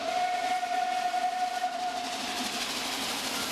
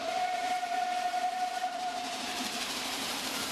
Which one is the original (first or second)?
first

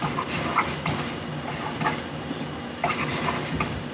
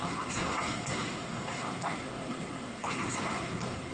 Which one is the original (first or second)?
first